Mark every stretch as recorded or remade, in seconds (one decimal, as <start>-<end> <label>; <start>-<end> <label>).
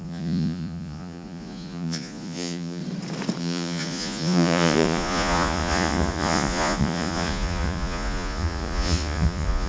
0.0-2.8 remade; 2.8-3.4 recorded; 3.4-9.7 remade